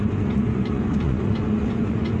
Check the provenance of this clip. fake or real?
fake